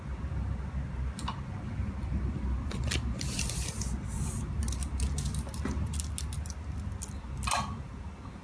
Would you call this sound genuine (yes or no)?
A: yes